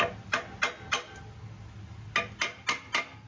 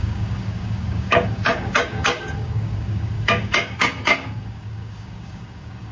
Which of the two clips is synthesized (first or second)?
second